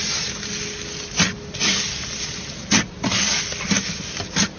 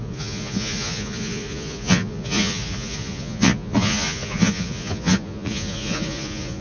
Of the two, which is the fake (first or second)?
second